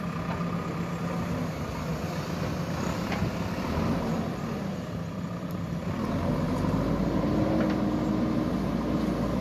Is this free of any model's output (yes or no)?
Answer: yes